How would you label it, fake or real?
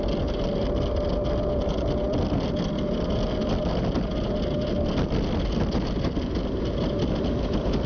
real